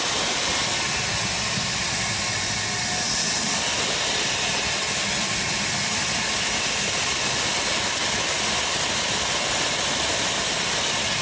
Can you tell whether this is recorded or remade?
recorded